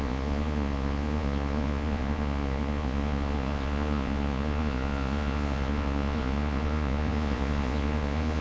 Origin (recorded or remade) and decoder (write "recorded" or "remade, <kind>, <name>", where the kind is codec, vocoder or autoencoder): remade, vocoder, Vocos